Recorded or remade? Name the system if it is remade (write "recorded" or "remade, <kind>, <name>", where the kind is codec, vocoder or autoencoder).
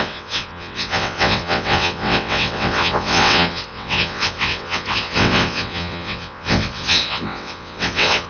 remade, vocoder, WaveNeXt